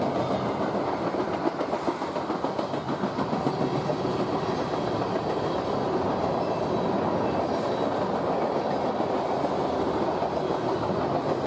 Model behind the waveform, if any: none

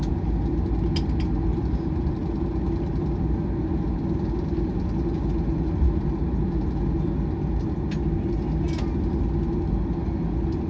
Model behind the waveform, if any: none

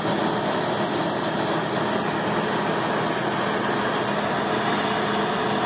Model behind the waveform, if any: none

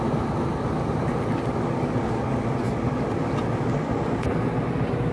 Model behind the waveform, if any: none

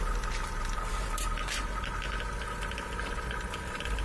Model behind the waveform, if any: vocoder, BigVGAN v2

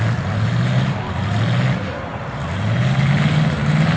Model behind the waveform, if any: none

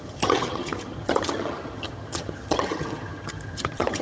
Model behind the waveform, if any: vocoder, HiFi-GAN